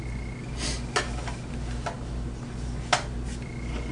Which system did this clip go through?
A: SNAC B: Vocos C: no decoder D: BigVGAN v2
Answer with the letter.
C